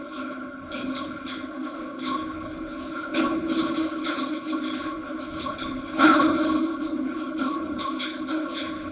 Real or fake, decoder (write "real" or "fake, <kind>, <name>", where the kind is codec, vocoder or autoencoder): fake, codec, HILCodec